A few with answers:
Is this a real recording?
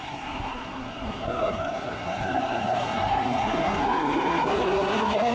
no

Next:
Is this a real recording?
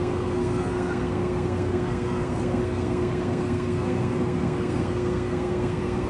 no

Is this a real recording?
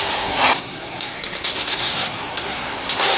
no